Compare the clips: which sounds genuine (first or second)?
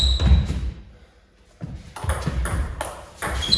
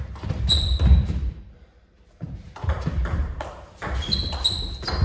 first